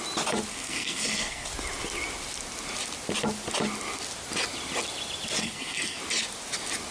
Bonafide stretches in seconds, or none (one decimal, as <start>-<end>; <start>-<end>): 0.0-0.5; 1.5-5.4; 6.0-6.9